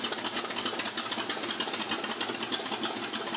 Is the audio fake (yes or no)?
no